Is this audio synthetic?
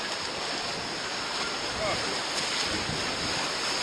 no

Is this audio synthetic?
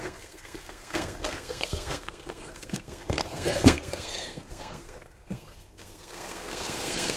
yes